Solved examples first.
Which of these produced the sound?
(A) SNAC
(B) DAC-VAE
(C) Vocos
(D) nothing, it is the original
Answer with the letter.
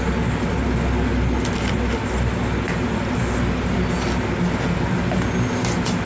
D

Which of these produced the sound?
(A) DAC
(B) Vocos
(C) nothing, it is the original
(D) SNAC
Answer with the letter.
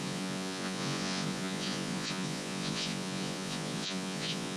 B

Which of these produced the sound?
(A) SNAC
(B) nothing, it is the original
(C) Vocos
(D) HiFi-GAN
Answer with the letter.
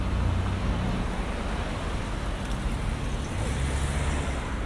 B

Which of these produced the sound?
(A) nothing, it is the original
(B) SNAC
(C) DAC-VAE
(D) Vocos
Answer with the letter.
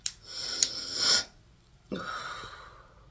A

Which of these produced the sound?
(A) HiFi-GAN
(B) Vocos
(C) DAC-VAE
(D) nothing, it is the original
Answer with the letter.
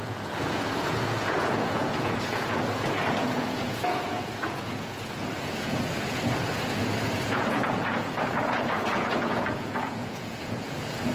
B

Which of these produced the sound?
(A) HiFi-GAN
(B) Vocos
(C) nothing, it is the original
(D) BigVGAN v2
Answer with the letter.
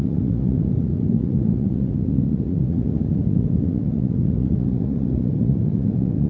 B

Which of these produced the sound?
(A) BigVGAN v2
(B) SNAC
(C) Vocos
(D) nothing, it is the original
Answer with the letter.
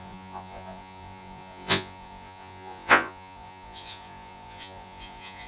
C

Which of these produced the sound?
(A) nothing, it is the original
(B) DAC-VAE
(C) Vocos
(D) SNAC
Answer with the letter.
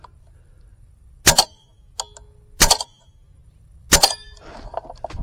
A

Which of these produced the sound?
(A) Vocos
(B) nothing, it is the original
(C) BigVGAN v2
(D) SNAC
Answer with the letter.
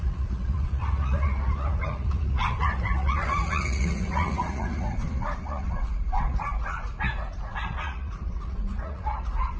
A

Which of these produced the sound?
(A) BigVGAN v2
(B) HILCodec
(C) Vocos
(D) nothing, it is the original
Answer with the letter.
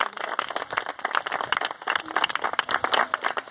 D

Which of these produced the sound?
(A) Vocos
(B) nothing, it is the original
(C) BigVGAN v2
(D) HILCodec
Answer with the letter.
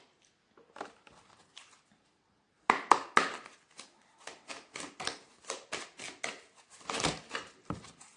B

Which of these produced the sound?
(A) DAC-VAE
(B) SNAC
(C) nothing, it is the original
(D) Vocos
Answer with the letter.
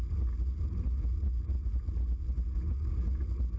C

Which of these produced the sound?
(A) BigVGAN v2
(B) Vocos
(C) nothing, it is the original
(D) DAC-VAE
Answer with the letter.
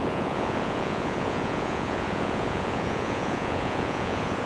B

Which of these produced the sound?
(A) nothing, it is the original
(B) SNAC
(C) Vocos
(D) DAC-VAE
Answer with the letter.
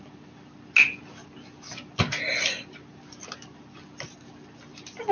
A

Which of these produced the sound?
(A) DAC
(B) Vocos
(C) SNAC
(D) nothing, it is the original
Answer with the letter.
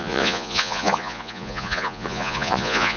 B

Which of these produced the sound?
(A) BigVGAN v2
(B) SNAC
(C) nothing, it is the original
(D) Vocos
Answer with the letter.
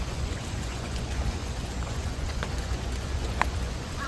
D